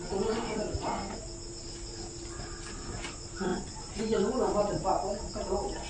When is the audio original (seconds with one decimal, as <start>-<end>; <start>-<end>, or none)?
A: 0.0-3.5; 4.0-5.9